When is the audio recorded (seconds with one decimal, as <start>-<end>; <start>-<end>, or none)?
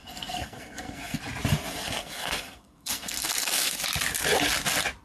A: 1.2-1.7; 3.8-5.0